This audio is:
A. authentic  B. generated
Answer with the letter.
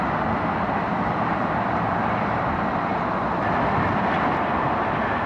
A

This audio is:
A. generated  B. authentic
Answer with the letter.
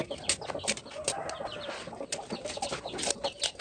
B